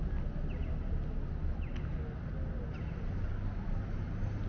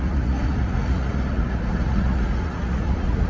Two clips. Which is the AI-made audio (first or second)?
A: second